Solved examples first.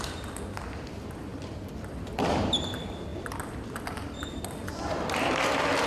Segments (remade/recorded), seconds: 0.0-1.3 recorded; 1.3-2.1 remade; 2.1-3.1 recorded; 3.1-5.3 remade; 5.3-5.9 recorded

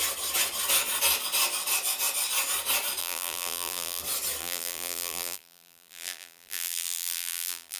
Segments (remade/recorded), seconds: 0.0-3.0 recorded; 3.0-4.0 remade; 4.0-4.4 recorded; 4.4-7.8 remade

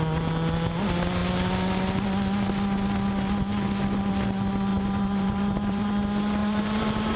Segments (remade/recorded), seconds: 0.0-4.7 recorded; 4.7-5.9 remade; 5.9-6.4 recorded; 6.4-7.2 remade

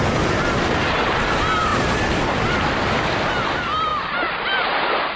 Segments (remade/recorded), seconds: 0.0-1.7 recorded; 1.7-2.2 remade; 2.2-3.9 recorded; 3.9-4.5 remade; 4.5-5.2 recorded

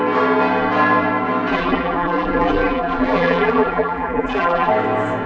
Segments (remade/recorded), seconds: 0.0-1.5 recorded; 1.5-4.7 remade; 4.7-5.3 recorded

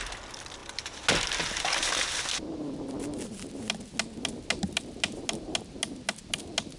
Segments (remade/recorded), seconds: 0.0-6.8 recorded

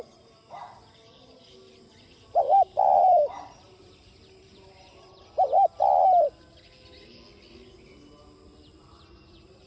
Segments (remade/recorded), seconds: 0.0-2.1 recorded; 2.1-5.2 remade; 5.2-9.7 recorded